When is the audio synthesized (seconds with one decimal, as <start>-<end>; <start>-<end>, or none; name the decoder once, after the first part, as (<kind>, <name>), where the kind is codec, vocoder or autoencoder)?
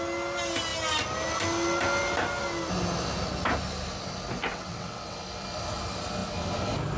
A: 4.5-5.2 (vocoder, WaveNeXt)